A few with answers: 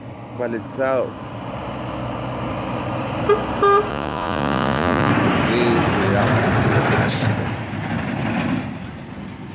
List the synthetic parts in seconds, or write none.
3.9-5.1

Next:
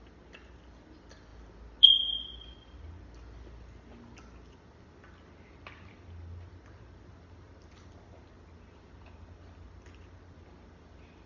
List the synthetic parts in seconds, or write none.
none

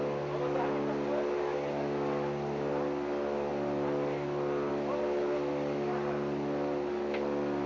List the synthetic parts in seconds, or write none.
none

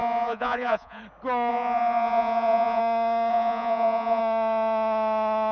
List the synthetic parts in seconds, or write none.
0.0-1.0; 1.5-2.8; 3.3-4.2

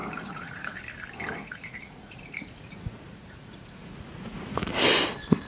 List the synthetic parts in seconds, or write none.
0.0-0.8; 1.4-4.7

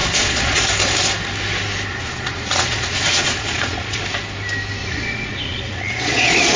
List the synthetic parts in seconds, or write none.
0.0-0.6; 1.9-4.0; 4.8-6.6